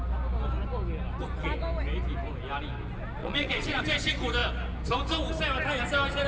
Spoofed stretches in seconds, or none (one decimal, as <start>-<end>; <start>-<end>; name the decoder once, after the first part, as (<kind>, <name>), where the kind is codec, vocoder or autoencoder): 3.2-3.8 (vocoder, WaveNeXt)